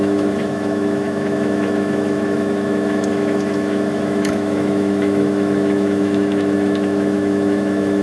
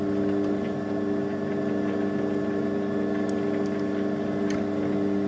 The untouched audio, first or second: second